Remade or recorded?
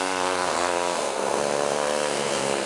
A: remade